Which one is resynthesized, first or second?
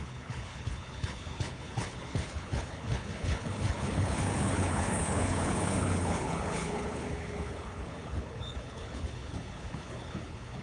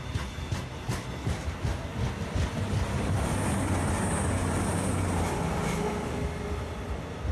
first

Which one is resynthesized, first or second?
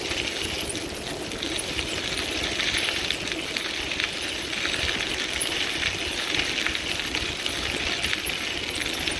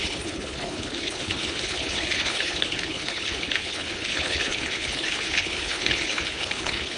second